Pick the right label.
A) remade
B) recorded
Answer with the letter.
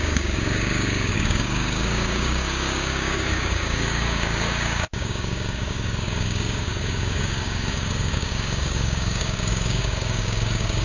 A